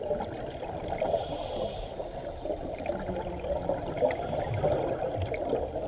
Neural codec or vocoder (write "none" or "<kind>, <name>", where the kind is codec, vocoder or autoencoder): none